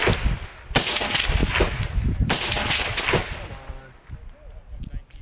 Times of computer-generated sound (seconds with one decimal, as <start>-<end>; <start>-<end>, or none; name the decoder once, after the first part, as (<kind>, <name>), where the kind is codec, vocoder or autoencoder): 1.4-3.8 (vocoder, BigVGAN v2)